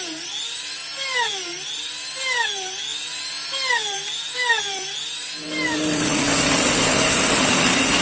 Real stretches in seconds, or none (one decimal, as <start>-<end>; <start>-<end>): 0.0-8.0